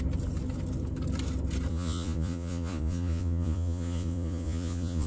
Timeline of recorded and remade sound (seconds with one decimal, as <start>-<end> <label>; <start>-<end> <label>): 0.0-1.7 recorded; 1.7-5.1 remade